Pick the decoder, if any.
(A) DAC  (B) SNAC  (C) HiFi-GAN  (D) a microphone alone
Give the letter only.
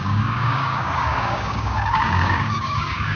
A